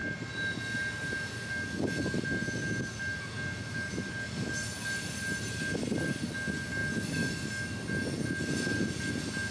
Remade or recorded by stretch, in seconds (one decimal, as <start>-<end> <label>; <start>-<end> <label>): 0.0-9.5 recorded